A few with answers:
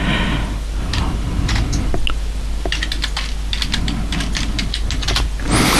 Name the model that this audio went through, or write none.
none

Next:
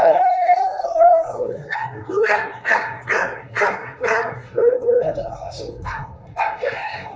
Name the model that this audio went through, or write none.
codec, SNAC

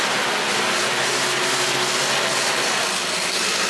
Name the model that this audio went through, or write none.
none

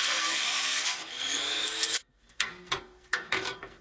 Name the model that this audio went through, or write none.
codec, SNAC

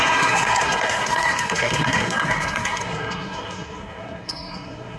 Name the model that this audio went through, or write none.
codec, SNAC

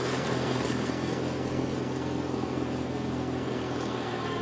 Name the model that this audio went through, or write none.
codec, SNAC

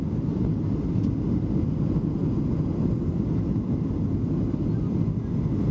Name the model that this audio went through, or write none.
none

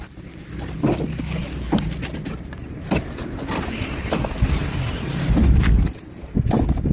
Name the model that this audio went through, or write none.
none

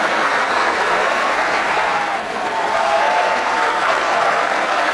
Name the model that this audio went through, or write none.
codec, SNAC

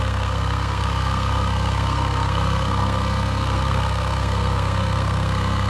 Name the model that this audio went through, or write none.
codec, SNAC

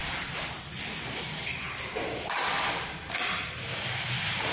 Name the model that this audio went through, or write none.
none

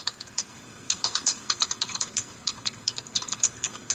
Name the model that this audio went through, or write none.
codec, SNAC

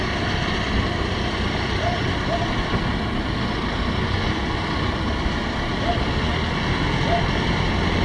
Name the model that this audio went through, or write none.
none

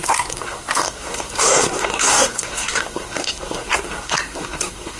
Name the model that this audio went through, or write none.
codec, SNAC